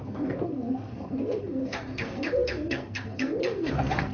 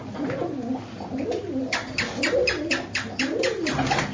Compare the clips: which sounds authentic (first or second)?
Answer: second